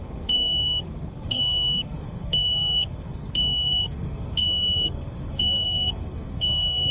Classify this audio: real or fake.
fake